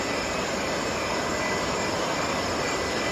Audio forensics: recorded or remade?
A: recorded